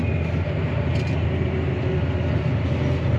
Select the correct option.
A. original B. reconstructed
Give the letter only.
A